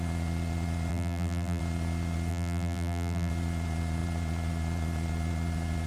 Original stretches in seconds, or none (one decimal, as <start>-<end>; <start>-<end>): 0.0-0.9; 1.6-2.3; 3.3-5.9